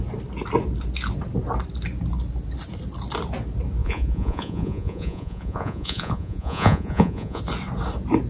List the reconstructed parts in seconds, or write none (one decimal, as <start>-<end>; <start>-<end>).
3.8-7.4